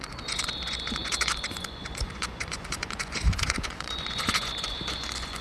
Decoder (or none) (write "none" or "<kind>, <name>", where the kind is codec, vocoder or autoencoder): vocoder, Vocos